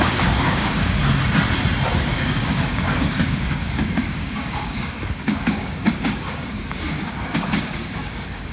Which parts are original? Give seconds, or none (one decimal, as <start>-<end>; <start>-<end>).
1.0-2.1